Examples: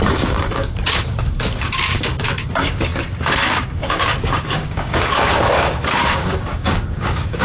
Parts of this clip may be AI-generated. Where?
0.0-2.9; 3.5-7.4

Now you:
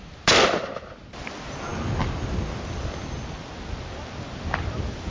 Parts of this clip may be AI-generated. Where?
none

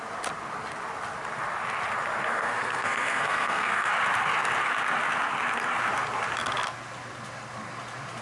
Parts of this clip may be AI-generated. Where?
2.3-3.9

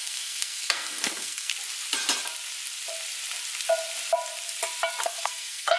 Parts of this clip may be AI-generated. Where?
0.0-1.5; 5.0-5.8

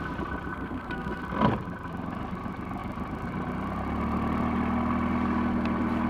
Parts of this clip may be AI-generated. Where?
0.5-1.2

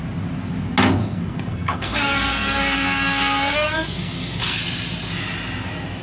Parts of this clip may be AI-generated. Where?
1.0-4.6

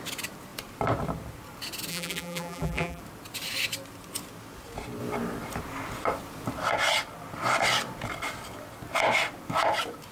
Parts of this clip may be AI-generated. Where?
1.9-3.0

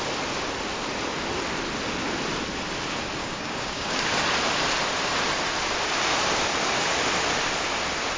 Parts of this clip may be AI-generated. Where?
3.2-3.9